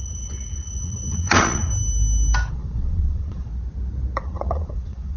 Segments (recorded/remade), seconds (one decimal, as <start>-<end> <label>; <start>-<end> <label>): 0.0-1.7 remade; 1.7-2.5 recorded; 2.5-3.5 remade; 3.5-4.2 recorded; 4.2-5.2 remade